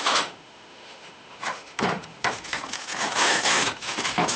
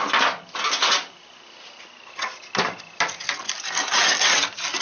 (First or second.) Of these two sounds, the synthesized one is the first